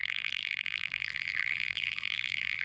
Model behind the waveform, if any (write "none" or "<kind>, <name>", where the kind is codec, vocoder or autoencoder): vocoder, BigVGAN v2